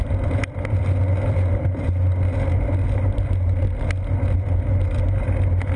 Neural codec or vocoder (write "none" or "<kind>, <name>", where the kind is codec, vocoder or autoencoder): none